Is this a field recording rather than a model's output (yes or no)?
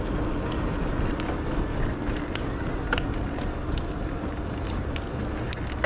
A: yes